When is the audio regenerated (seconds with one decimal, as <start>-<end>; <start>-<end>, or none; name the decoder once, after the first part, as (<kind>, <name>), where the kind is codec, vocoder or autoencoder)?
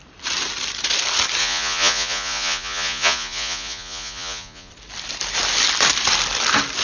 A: 1.4-4.7 (vocoder, Vocos)